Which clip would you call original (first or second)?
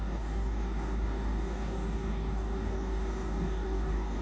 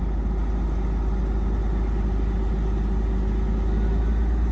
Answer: second